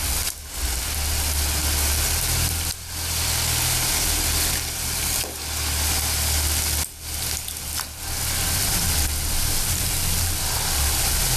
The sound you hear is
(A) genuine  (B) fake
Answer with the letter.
A